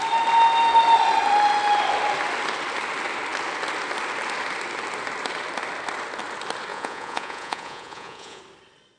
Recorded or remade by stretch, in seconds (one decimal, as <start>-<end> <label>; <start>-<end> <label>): 0.0-6.7 recorded; 6.7-8.4 remade; 8.4-9.0 recorded